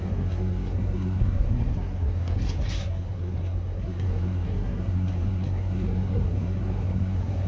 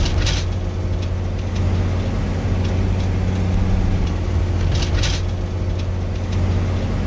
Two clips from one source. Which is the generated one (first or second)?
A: first